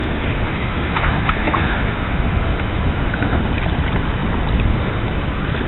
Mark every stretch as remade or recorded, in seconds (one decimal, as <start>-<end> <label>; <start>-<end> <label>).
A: 0.0-3.4 remade; 3.4-5.7 recorded